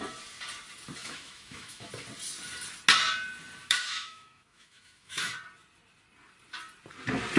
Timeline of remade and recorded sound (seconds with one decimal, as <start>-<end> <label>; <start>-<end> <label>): 0.0-1.0 recorded; 1.0-1.9 remade; 1.9-3.6 recorded; 3.6-5.3 remade; 5.3-7.4 recorded